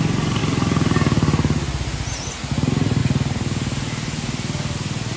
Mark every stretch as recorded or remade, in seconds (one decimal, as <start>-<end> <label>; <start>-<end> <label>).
0.0-5.2 recorded